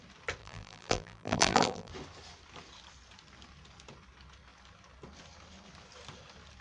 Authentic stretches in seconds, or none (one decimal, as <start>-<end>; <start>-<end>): 0.0-0.4; 1.9-6.6